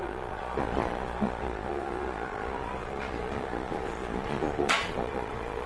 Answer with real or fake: fake